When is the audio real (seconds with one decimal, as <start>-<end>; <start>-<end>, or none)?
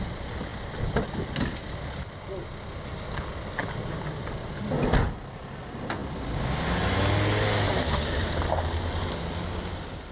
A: 0.0-10.1